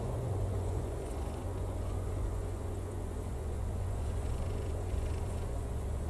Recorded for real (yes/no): no